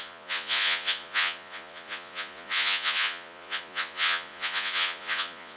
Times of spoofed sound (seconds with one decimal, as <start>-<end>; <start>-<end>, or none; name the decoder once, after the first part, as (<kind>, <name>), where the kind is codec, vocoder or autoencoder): 0.0-5.6 (vocoder, Vocos)